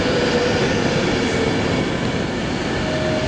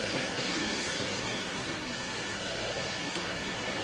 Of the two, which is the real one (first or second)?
first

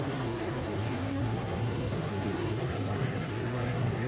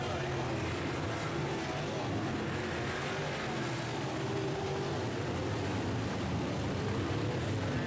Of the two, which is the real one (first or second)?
second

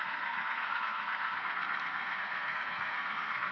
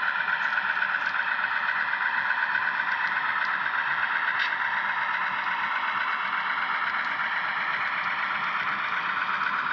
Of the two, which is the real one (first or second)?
second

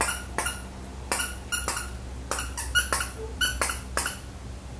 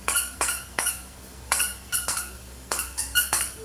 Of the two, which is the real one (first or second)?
first